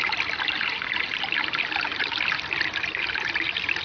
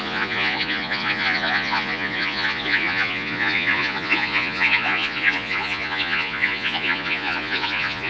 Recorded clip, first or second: first